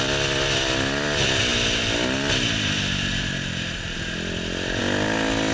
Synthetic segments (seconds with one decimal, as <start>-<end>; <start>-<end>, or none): none